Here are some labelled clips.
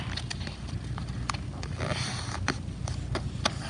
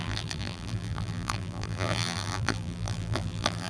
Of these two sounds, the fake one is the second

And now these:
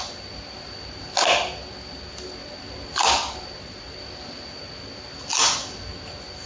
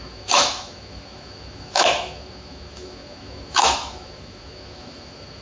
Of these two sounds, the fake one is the second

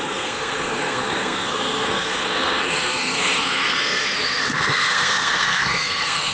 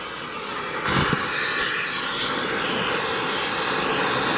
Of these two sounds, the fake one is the first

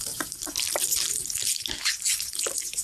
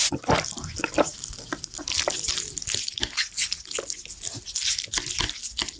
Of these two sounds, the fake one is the first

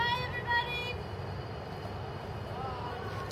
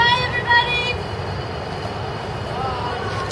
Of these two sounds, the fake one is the second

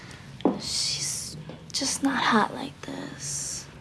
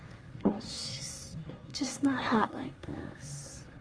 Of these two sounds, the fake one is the second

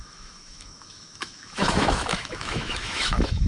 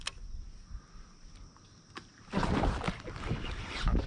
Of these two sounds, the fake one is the first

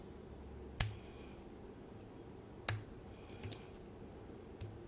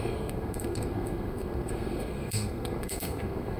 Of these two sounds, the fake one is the second